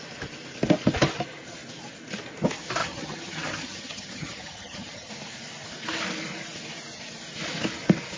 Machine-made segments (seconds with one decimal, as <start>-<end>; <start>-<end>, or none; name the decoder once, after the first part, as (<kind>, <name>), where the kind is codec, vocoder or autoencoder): 2.8-5.1 (vocoder, HiFi-GAN)